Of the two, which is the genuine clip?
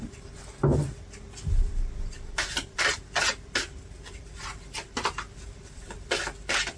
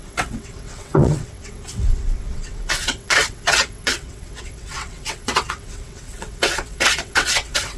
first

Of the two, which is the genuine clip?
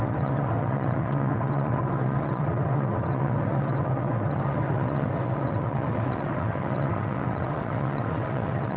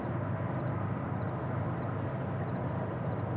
second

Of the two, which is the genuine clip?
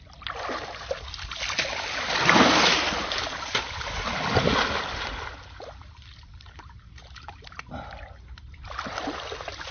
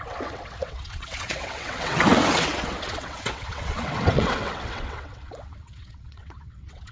first